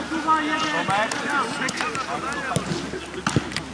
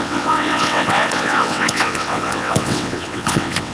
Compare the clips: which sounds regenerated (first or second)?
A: second